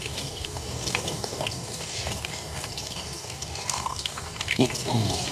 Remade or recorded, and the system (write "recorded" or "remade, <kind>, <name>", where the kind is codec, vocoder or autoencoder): remade, codec, DAC